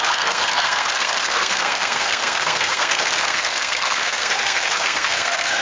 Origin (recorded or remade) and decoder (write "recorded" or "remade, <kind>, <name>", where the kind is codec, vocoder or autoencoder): remade, codec, SNAC